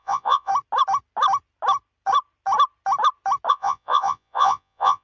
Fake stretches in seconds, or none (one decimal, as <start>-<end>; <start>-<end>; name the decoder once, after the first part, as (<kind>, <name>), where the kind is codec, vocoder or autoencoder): 0.0-0.5 (vocoder, Vocos); 3.5-5.0

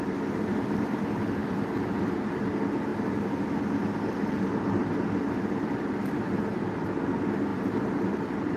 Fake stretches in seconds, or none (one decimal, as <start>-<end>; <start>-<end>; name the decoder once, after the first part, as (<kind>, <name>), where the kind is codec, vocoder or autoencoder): none